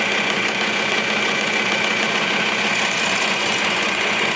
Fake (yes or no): yes